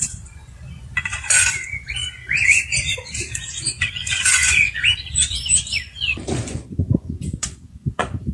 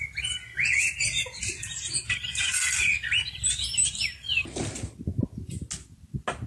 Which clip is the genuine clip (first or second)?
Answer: second